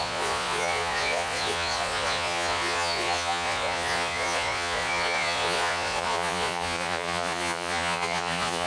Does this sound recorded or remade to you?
remade